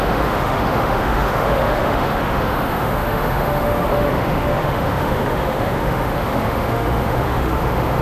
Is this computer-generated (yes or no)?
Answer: yes